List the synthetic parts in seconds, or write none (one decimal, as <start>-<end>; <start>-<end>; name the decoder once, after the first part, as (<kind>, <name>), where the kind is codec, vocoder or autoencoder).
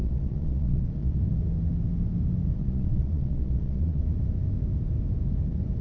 0.0-1.2 (vocoder, Vocos); 2.6-4.0